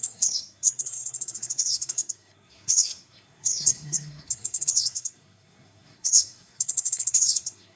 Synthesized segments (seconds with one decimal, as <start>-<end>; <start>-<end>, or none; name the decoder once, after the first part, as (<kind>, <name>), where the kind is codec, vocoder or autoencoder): 0.0-7.8 (codec, SNAC)